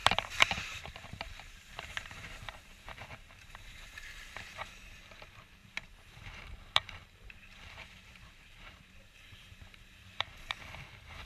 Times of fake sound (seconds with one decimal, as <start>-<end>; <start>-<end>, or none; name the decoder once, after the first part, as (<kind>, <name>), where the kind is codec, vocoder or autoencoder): 0.0-4.7 (vocoder, BigVGAN v2); 5.6-10.5